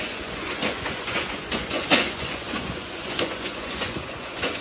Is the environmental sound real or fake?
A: fake